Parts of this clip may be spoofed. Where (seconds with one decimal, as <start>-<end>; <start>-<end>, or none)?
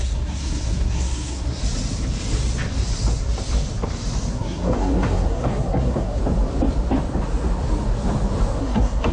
0.0-1.6; 4.3-6.2; 8.6-9.1